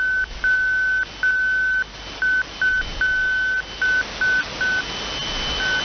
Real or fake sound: real